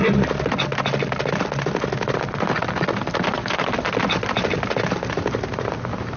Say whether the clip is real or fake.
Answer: real